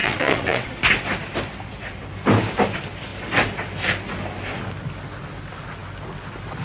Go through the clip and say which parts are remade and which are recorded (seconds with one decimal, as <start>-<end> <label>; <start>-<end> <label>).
0.0-0.7 remade; 0.7-6.6 recorded